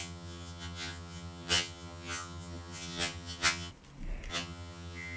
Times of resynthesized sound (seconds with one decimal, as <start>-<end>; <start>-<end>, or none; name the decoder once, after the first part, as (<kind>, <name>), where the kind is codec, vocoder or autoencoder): 0.0-3.7 (vocoder, HiFi-GAN); 4.3-5.2